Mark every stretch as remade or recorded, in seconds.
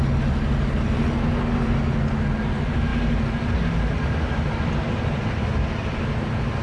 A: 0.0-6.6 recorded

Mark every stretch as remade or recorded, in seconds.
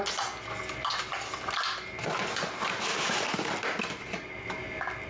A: 0.0-5.1 recorded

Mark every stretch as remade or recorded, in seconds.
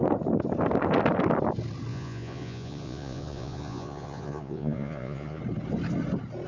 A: 0.0-1.9 recorded; 1.9-5.4 remade; 5.4-6.5 recorded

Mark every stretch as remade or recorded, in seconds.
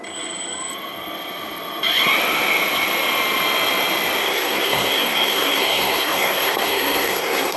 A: 0.0-4.2 recorded; 4.2-7.6 remade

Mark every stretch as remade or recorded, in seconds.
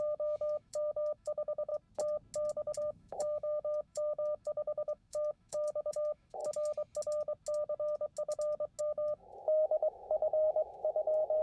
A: 0.0-1.7 remade; 1.7-2.8 recorded; 2.8-6.4 remade; 6.4-8.8 recorded; 8.8-11.4 remade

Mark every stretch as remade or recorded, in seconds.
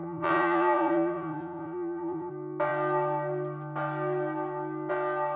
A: 0.0-2.3 remade; 2.3-5.4 recorded